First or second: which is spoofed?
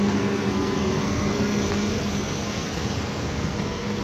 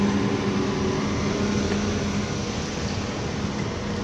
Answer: first